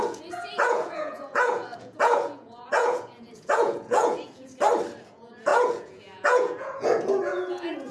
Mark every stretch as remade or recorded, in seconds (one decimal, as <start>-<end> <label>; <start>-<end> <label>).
0.0-4.5 remade; 4.5-5.0 recorded; 5.0-7.9 remade